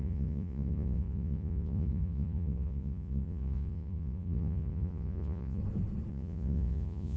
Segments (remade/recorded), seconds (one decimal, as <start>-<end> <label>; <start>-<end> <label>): 0.0-5.6 remade; 5.6-6.1 recorded; 6.1-7.2 remade